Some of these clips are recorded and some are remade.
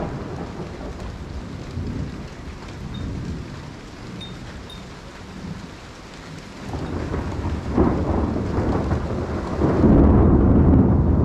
recorded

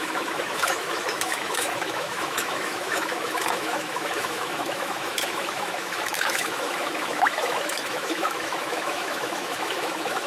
remade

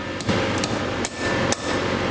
recorded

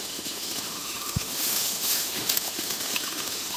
remade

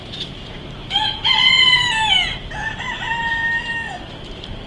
recorded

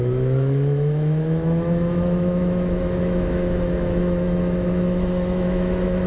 remade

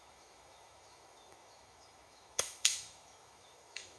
remade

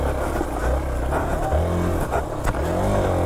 recorded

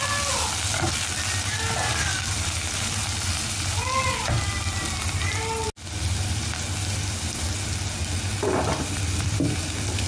recorded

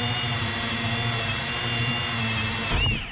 recorded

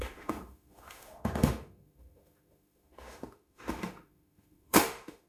remade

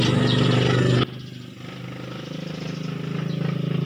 recorded